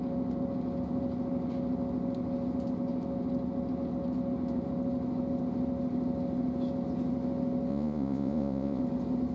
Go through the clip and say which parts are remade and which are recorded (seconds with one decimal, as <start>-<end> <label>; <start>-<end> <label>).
0.0-7.7 recorded; 7.7-8.8 remade; 8.8-9.3 recorded